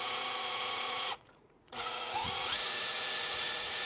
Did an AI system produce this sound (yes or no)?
yes